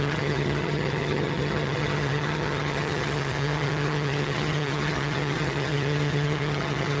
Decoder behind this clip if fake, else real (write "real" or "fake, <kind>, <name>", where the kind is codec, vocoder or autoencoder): fake, vocoder, HiFi-GAN